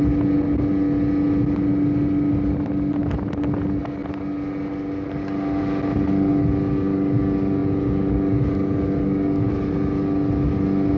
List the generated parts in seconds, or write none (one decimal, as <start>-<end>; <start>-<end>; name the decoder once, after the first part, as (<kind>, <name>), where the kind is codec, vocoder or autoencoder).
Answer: none